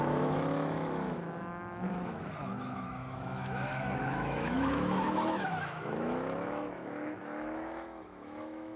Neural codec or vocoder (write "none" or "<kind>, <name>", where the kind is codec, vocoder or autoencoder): autoencoder, DAC-VAE